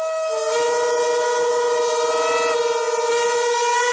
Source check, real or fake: real